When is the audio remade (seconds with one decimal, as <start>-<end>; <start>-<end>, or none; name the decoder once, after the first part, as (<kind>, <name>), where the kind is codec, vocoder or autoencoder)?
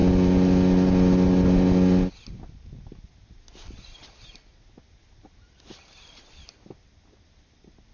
none